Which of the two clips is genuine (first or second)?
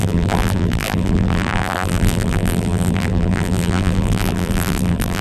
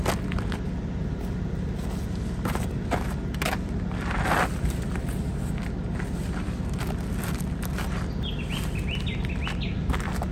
second